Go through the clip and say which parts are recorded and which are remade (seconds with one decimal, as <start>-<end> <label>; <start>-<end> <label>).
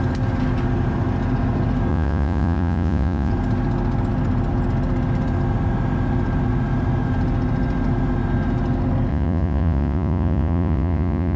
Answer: 0.0-1.9 recorded; 1.9-3.3 remade; 3.3-9.1 recorded; 9.1-11.4 remade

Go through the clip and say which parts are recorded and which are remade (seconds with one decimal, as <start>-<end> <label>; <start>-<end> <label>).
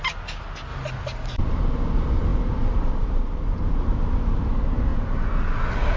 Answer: 0.0-6.0 recorded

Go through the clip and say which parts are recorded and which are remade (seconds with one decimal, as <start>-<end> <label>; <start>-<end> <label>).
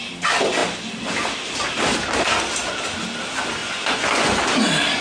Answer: 0.0-3.6 recorded; 3.6-4.4 remade; 4.4-5.0 recorded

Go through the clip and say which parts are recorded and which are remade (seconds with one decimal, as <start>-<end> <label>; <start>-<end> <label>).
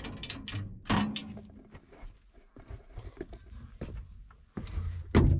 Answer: 0.0-5.4 recorded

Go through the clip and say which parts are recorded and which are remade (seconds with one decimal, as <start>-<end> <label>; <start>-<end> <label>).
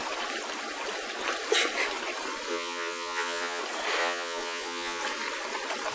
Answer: 0.0-2.5 recorded; 2.5-3.6 remade; 3.6-4.0 recorded; 4.0-5.0 remade; 5.0-5.9 recorded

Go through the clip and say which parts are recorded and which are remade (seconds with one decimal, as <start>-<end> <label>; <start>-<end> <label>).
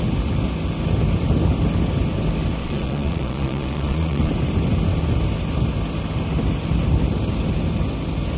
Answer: 0.0-2.6 recorded; 2.6-4.3 remade; 4.3-8.4 recorded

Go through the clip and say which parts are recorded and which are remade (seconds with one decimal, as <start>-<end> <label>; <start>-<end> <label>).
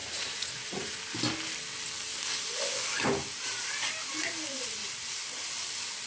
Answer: 0.0-1.0 remade; 1.0-6.1 recorded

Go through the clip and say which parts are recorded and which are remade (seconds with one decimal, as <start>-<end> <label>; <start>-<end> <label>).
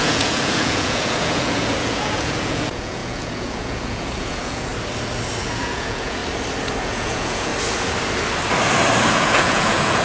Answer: 0.0-4.7 remade; 4.7-5.4 recorded; 5.4-6.2 remade; 6.2-6.8 recorded; 6.8-7.5 remade; 7.5-9.1 recorded; 9.1-10.0 remade